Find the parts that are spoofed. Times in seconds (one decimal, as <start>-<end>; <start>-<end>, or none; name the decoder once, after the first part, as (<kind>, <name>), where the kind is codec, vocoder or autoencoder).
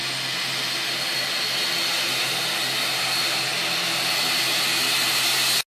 none